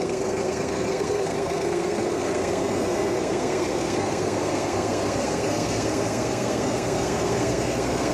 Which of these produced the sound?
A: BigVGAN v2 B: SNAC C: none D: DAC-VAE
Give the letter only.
B